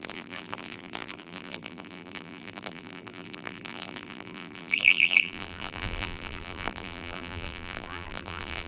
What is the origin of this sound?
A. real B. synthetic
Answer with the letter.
B